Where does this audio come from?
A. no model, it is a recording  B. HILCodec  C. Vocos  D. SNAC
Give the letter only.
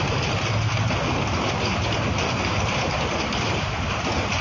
A